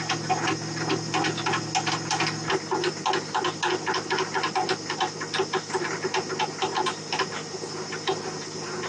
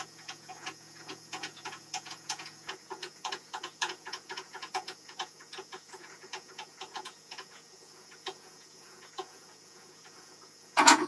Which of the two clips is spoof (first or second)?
second